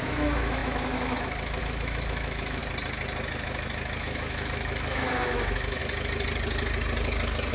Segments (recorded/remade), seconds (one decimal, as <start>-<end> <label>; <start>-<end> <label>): 0.0-2.6 remade; 2.6-4.0 recorded; 4.0-5.8 remade; 5.8-7.5 recorded